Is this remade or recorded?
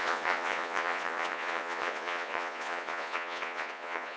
remade